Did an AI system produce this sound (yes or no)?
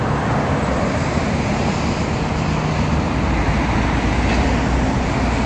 no